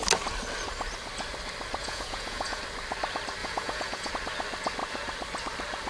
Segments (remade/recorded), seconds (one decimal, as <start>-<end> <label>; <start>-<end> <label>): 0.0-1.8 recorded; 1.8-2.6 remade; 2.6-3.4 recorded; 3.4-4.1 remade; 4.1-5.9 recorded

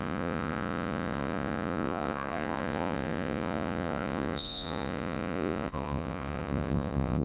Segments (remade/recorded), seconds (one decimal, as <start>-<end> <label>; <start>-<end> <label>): 0.0-7.2 remade

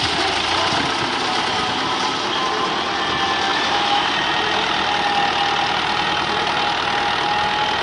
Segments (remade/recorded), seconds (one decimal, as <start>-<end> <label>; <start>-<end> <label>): 0.0-3.5 recorded; 3.5-4.1 remade; 4.1-7.8 recorded